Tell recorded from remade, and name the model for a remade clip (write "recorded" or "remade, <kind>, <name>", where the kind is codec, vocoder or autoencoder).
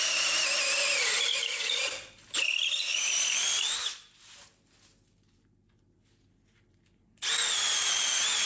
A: recorded